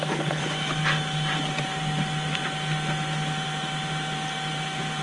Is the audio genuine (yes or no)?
yes